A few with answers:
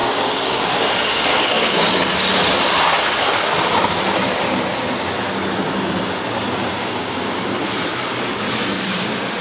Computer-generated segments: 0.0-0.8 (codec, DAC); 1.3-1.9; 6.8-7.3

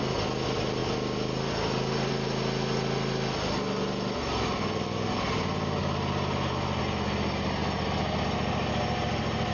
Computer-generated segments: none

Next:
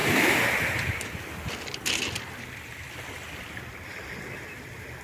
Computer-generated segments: 0.0-5.0 (vocoder, BigVGAN v2)

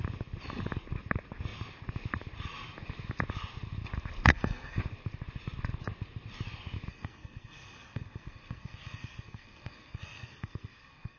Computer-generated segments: 4.3-4.8 (codec, SNAC); 6.9-11.2

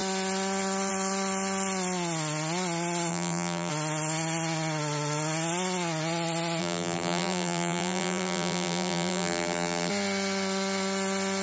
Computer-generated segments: 3.1-3.7 (vocoder, BigVGAN v2); 6.6-9.9